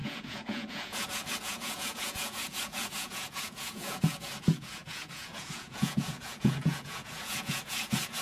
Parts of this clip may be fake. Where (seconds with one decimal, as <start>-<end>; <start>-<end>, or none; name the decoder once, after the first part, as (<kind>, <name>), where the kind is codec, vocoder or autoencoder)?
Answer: 0.0-8.2 (vocoder, Vocos)

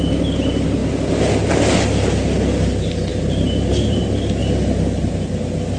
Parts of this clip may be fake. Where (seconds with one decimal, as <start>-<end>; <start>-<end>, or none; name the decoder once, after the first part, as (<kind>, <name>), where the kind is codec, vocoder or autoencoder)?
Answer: 3.1-4.0 (vocoder, BigVGAN v2)

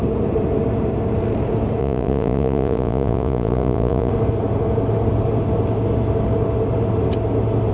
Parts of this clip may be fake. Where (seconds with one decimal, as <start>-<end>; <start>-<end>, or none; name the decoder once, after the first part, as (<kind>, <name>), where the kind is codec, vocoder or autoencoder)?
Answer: 1.8-4.1 (vocoder, Vocos)

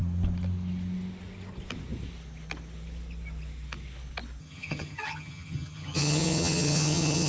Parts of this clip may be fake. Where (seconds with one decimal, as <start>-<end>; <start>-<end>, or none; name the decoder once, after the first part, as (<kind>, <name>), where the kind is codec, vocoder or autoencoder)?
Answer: 4.4-7.3 (vocoder, HiFi-GAN)

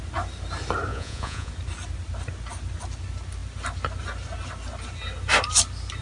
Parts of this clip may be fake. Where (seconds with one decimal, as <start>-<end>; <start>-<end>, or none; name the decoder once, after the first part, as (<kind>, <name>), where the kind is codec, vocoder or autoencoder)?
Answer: 0.9-1.5 (vocoder, Vocos)

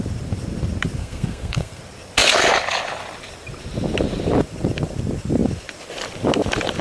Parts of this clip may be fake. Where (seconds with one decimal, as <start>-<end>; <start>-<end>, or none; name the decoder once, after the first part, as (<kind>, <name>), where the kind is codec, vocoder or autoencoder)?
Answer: 1.0-1.8 (codec, SNAC)

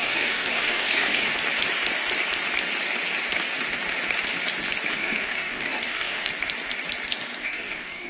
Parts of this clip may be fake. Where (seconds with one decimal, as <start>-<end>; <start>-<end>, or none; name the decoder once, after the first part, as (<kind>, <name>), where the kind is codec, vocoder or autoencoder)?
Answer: 0.0-1.3 (codec, DAC); 4.9-6.3; 7.4-8.1

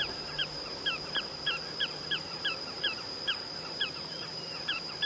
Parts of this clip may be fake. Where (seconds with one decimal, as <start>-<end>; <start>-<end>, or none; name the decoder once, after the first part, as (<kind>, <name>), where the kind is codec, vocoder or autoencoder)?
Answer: 0.0-5.0 (vocoder, BigVGAN v2)